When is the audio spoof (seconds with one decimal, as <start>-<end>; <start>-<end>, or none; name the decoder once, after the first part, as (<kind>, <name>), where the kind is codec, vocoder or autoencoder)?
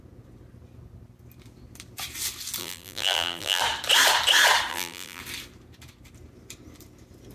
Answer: 2.6-3.6 (vocoder, BigVGAN v2); 4.7-5.2